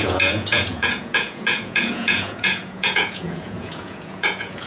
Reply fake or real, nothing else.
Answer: fake